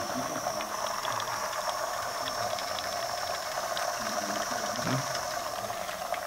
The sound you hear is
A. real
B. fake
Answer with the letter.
B